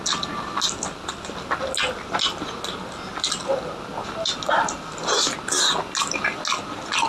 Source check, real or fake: real